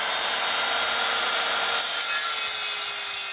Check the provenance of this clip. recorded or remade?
recorded